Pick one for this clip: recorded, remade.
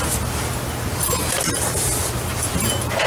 recorded